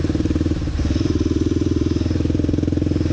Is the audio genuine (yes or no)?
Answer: no